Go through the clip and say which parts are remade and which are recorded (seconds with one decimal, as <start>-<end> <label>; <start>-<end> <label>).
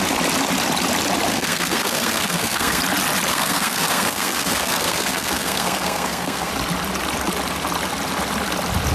0.0-1.3 recorded; 1.3-2.8 remade; 2.8-3.3 recorded; 3.3-6.5 remade; 6.5-8.9 recorded